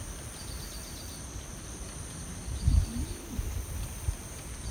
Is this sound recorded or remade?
recorded